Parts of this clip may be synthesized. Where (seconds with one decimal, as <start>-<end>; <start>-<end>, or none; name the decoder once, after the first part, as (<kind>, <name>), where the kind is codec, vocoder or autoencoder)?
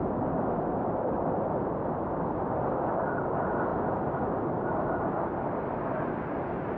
none